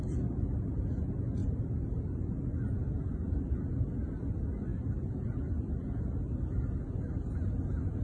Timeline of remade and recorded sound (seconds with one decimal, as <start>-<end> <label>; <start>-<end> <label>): 0.0-8.0 recorded